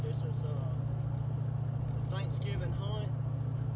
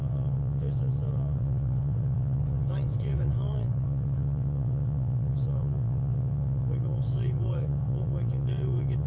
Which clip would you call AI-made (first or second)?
second